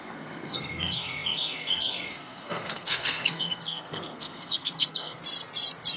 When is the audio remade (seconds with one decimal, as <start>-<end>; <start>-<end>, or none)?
0.0-5.2